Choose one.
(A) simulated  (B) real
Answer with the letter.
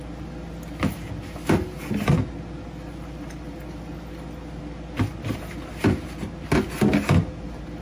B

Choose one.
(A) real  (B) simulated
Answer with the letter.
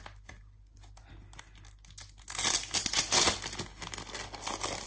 A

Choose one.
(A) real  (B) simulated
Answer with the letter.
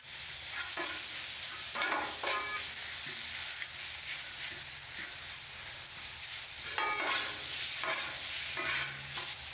A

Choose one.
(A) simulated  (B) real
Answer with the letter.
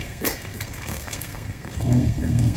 A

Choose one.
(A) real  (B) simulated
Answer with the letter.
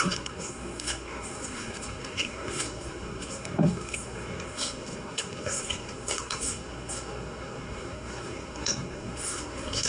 B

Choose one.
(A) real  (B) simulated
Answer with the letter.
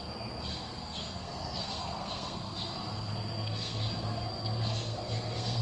B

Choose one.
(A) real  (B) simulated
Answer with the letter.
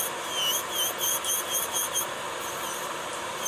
A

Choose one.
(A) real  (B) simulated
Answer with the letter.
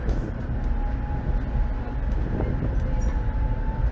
A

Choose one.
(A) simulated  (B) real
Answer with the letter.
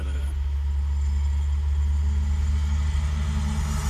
B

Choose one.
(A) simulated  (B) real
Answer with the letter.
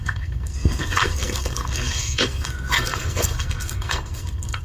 A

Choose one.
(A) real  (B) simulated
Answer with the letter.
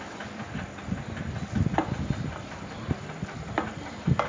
A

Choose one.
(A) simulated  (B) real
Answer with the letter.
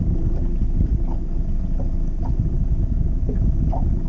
B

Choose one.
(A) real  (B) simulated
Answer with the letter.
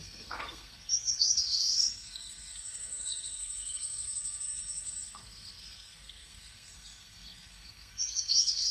B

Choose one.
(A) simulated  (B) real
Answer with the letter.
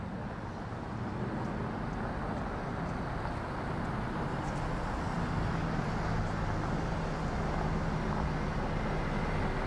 B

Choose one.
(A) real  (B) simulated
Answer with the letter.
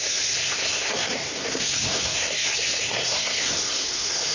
B